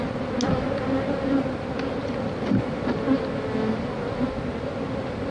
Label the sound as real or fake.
real